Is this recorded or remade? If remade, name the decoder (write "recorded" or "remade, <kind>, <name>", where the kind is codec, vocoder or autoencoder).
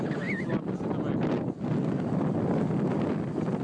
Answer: recorded